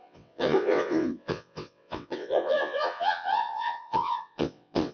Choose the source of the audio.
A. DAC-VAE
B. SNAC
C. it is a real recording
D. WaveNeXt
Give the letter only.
D